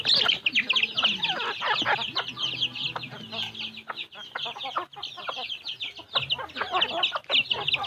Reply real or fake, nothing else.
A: real